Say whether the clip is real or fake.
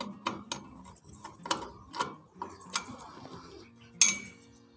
real